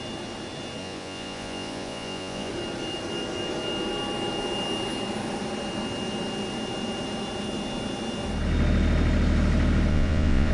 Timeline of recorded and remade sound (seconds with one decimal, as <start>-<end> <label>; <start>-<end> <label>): 0.0-0.8 recorded; 0.8-2.5 remade; 2.5-9.9 recorded; 9.9-10.5 remade